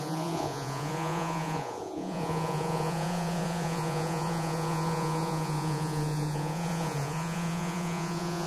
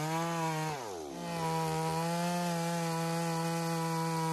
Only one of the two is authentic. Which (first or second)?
second